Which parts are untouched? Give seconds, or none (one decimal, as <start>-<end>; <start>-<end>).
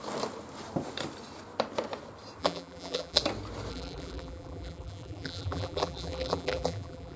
0.0-2.4; 3.2-3.7